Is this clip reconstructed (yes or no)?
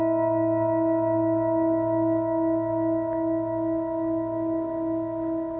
no